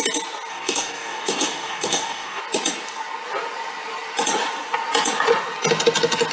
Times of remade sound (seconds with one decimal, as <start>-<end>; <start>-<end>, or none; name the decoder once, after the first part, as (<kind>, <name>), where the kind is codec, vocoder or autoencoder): 0.5-2.4 (codec, DAC)